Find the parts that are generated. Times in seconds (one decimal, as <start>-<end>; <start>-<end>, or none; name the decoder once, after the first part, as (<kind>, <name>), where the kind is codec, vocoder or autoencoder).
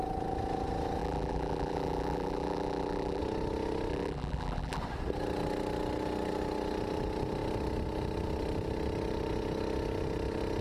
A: 1.0-3.2 (vocoder, BigVGAN v2); 3.9-4.8